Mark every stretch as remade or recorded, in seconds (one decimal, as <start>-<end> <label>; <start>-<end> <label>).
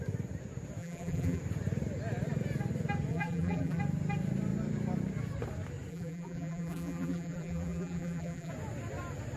0.0-0.8 recorded; 0.8-1.4 remade; 1.4-3.1 recorded; 3.1-3.8 remade; 3.8-5.9 recorded; 5.9-8.5 remade; 8.5-9.4 recorded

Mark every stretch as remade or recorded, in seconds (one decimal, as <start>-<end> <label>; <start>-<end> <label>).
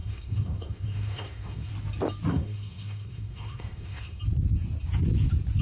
0.0-1.7 remade; 1.7-2.3 recorded; 2.3-4.2 remade; 4.2-5.6 recorded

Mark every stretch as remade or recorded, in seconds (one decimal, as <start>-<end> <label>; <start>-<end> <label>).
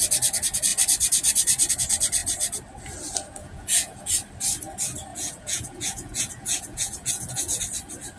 0.0-3.4 recorded; 3.4-4.1 remade; 4.1-5.1 recorded; 5.1-7.6 remade; 7.6-8.2 recorded